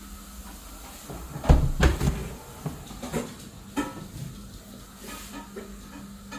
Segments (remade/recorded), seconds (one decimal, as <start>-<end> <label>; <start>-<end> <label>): 0.0-6.4 recorded